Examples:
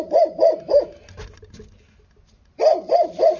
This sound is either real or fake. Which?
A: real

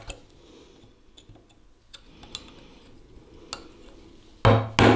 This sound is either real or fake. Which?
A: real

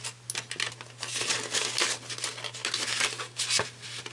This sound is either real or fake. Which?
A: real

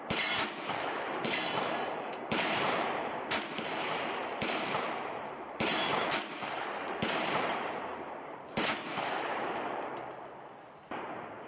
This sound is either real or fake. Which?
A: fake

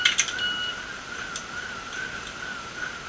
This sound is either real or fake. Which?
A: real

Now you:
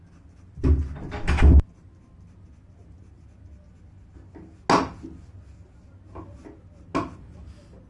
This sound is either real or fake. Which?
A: real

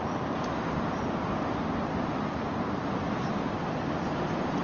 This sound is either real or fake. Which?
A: real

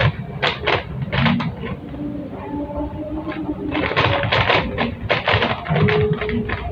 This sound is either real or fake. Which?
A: real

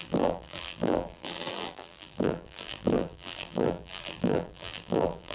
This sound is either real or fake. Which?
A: fake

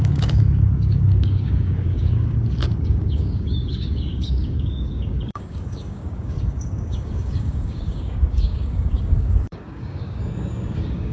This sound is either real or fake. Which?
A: fake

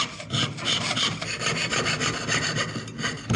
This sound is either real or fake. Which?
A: real